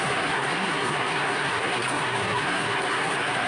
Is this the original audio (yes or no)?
no